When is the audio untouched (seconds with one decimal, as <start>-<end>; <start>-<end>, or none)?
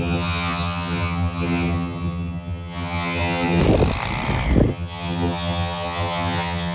3.6-4.7